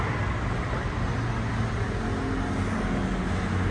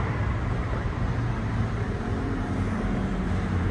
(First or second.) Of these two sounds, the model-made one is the second